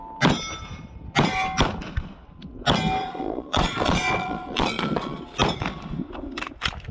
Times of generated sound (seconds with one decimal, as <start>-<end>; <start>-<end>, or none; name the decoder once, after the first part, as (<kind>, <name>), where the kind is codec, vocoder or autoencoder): 3.0-5.2 (vocoder, Vocos)